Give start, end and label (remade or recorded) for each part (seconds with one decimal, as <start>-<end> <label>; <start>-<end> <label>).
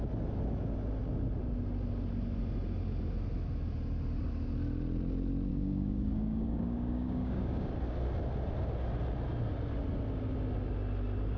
0.0-5.5 recorded; 5.5-7.7 remade; 7.7-11.4 recorded